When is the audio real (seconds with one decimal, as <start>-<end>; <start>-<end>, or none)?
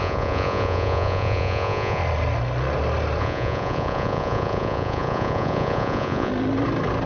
2.0-3.2; 6.3-7.1